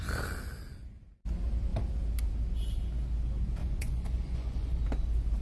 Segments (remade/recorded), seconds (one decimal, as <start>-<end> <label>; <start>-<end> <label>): 0.0-3.6 recorded; 3.6-4.8 remade; 4.8-5.4 recorded